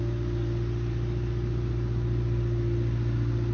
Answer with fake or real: real